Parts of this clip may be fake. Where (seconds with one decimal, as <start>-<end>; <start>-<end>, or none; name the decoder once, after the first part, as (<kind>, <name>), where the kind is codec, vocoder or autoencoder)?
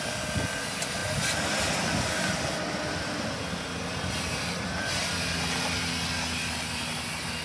none